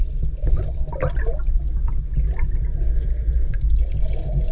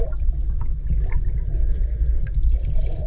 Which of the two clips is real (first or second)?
first